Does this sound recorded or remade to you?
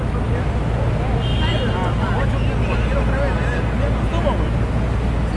recorded